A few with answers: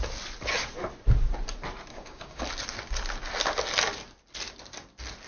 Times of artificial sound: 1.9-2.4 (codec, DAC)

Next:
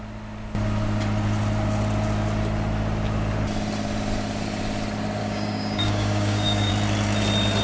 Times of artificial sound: 5.2-6.7 (codec, DAC)

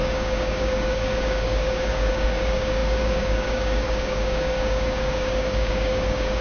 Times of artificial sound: 0.0-6.4 (codec, DAC)

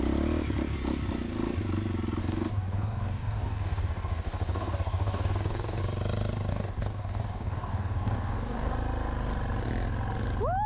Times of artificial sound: 2.2-5.8 (codec, DAC); 6.5-8.7

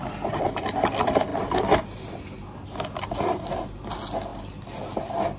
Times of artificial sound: none